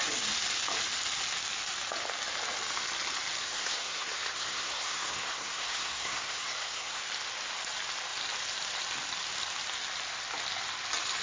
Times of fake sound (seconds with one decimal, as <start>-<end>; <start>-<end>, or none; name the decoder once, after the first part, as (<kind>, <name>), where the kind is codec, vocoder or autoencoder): 3.4-7.0 (codec, SNAC)